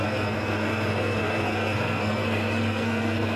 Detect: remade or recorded remade